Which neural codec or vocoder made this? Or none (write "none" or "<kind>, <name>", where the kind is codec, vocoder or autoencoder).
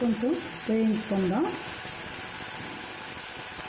none